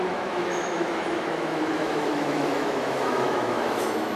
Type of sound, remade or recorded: remade